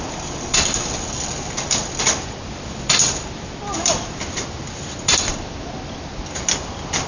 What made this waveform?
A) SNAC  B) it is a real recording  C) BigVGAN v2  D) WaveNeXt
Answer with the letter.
B